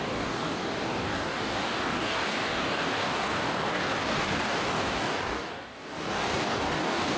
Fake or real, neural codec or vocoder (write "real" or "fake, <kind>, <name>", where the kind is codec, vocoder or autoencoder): fake, codec, DAC